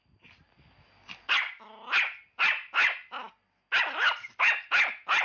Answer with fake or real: real